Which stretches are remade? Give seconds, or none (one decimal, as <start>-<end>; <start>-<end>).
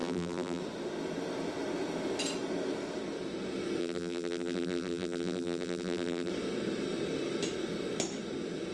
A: 0.0-0.6; 3.8-6.3